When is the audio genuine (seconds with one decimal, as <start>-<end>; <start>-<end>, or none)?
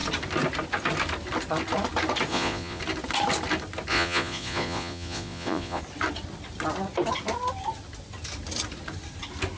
0.0-2.3; 2.8-3.9; 5.8-9.6